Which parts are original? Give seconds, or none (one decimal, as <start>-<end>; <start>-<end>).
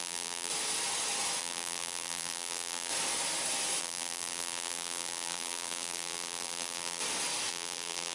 0.5-1.4; 2.9-3.8; 7.0-7.5